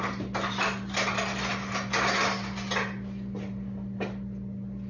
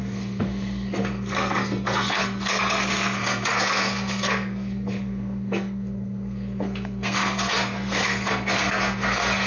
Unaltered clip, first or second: first